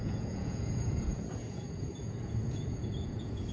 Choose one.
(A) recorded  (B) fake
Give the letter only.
B